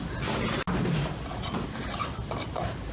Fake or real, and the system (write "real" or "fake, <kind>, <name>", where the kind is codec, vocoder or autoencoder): real